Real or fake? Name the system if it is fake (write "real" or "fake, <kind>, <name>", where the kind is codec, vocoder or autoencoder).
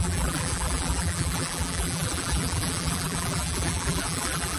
fake, vocoder, BigVGAN v2